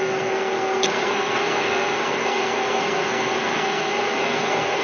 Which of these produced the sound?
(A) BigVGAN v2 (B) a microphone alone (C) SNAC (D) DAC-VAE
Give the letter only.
C